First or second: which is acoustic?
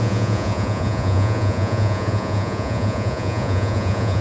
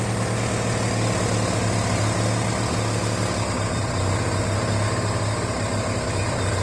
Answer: second